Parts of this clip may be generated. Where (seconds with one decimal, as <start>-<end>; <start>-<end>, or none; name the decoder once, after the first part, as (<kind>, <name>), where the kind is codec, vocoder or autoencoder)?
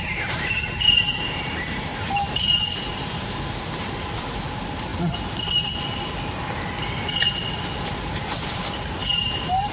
0.0-1.9 (vocoder, BigVGAN v2); 2.9-4.9; 7.9-9.7